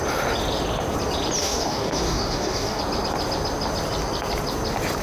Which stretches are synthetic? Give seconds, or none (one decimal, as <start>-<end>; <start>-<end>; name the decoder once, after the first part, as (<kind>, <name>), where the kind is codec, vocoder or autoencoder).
1.4-2.8 (codec, DAC)